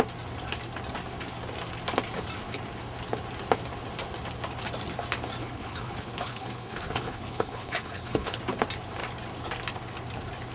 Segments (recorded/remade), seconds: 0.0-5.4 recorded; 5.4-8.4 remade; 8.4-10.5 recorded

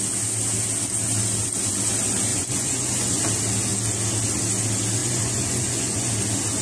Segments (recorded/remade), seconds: 0.0-2.3 recorded; 2.3-3.2 remade; 3.2-5.0 recorded; 5.0-6.1 remade; 6.1-6.6 recorded

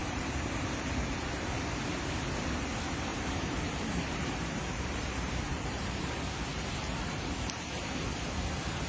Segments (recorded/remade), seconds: 0.0-1.1 remade; 1.1-3.1 recorded; 3.1-6.1 remade; 6.1-6.5 recorded; 6.5-7.9 remade; 7.9-8.9 recorded

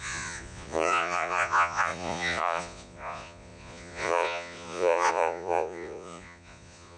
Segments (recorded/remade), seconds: 0.0-7.0 remade

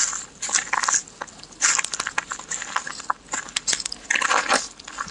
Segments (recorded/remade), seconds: 0.0-5.1 recorded